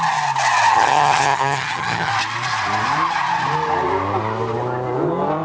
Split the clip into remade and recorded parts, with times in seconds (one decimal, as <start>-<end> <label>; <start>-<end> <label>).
0.0-0.7 recorded; 0.7-2.1 remade; 2.1-5.4 recorded